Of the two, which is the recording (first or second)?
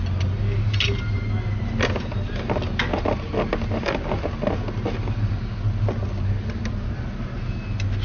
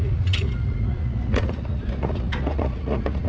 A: first